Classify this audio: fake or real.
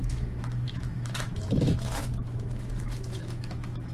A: fake